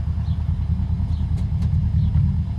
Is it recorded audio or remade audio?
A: recorded